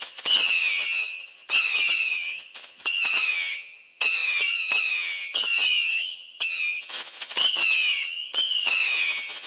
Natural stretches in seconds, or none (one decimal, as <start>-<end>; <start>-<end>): none